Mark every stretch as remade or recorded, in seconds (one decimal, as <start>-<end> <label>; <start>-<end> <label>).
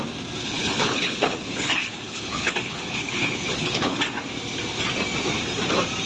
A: 0.0-0.4 recorded; 0.4-4.0 remade; 4.0-6.1 recorded